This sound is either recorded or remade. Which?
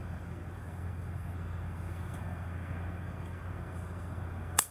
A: remade